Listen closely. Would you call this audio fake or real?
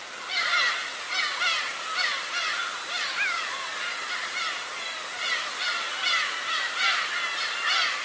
real